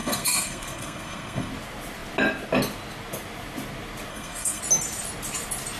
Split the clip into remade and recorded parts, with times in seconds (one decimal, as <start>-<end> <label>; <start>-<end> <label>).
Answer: 0.0-1.5 remade; 1.5-4.1 recorded; 4.1-4.6 remade; 4.6-5.8 recorded

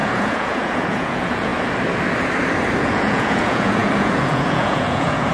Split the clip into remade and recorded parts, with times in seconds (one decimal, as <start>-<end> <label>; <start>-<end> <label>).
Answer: 0.0-1.5 remade; 1.5-2.8 recorded; 2.8-5.3 remade

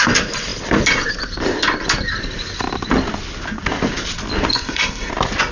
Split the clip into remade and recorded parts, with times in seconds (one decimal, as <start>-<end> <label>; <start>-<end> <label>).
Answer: 0.0-4.5 recorded; 4.5-5.1 remade; 5.1-5.5 recorded

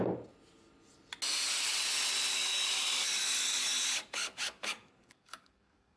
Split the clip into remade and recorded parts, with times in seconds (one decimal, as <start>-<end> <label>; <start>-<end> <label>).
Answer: 0.0-2.3 recorded; 2.3-6.0 remade